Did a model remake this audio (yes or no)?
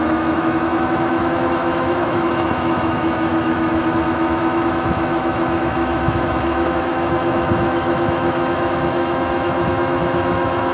yes